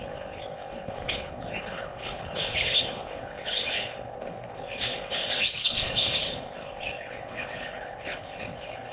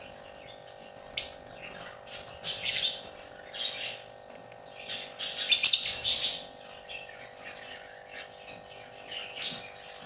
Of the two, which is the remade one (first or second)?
first